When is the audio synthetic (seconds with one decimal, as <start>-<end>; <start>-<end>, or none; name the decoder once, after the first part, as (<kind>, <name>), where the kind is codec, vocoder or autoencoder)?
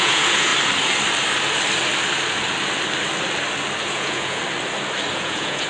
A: 0.0-0.5 (vocoder, Vocos); 3.9-4.4; 5.1-5.7